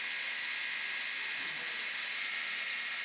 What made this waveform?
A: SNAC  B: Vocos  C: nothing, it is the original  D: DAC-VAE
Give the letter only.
C